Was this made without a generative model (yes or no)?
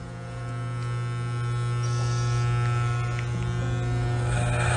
yes